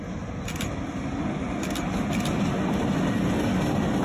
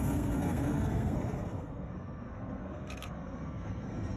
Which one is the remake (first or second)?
second